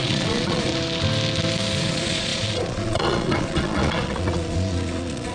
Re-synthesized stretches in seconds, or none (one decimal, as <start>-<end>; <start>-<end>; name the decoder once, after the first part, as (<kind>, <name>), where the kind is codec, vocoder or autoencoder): 0.0-0.7 (vocoder, Vocos); 1.8-5.3